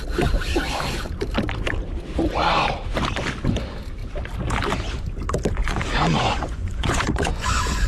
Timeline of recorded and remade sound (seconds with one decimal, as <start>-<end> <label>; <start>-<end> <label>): 0.0-5.6 recorded; 5.6-7.9 remade